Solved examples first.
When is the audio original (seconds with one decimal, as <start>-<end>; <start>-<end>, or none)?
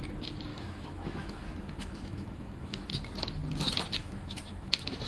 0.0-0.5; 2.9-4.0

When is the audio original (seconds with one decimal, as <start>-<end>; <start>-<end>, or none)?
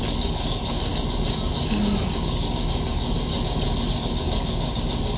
0.9-2.0; 3.3-3.9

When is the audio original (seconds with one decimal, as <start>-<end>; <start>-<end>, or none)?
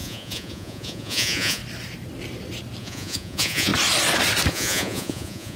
1.6-2.8; 3.7-4.5